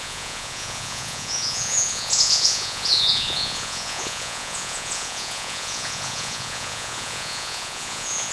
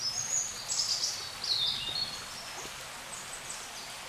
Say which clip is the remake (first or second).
first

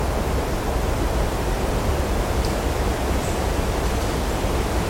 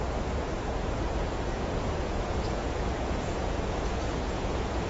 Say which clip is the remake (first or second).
second